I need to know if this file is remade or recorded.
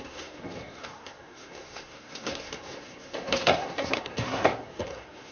remade